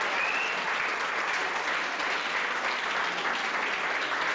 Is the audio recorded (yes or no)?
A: yes